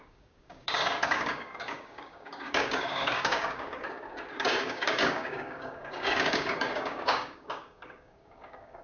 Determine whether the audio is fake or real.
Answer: fake